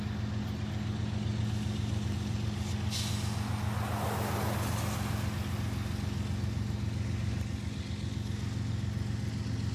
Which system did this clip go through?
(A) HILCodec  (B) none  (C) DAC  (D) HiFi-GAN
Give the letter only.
B